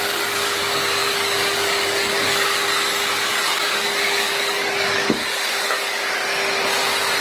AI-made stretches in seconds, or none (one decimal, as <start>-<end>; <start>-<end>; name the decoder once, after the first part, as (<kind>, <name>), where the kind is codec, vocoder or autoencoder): 0.0-6.0 (codec, DAC)